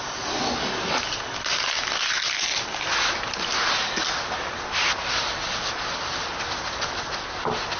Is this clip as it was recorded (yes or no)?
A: yes